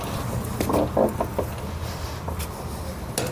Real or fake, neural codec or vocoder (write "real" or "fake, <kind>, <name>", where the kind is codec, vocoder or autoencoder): real